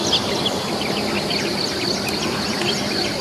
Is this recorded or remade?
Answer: recorded